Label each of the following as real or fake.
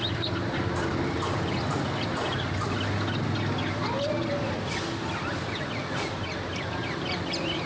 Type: real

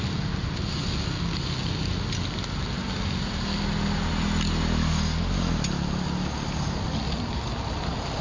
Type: real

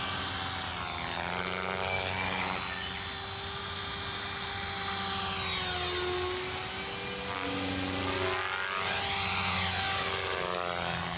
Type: real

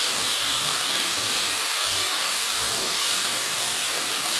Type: fake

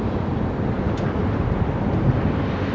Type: real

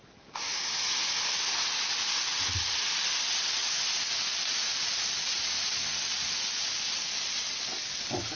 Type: real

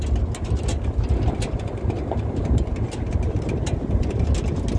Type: real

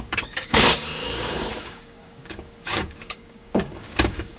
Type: fake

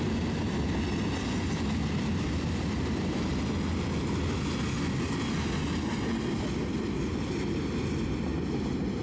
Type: real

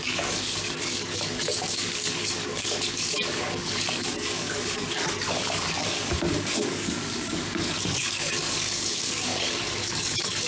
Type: fake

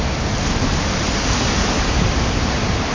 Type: real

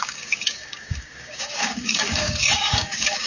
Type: fake